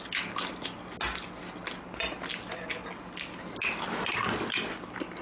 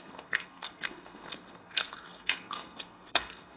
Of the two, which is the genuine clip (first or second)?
first